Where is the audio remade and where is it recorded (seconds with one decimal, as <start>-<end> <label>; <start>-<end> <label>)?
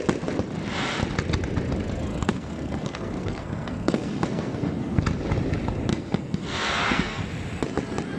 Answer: 0.0-2.1 recorded; 2.1-5.0 remade; 5.0-5.9 recorded; 5.9-7.2 remade; 7.2-8.2 recorded